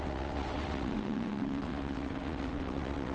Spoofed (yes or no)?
yes